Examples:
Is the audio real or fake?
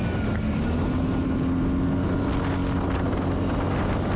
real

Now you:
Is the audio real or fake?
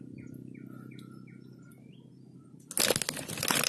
real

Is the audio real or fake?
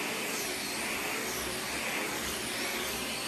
real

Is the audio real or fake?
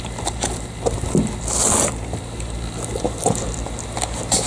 real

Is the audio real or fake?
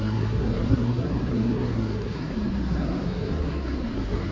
fake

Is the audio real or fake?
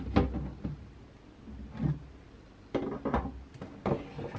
real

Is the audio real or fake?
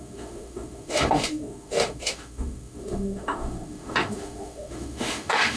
fake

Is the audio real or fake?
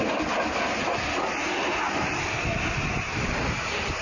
real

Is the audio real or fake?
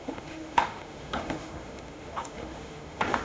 fake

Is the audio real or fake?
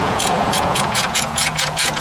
fake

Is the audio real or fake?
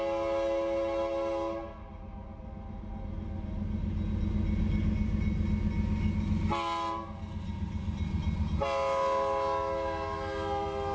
real